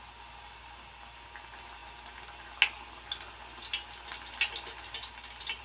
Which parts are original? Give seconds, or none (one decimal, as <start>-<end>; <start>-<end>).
0.0-5.6